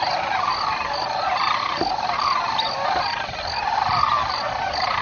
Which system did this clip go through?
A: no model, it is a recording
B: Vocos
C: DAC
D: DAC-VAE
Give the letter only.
A